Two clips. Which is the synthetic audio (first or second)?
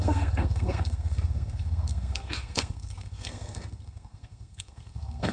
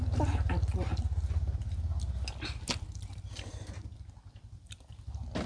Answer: first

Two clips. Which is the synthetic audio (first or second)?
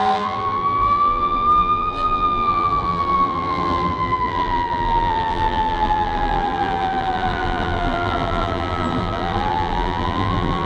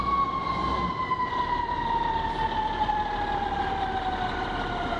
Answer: first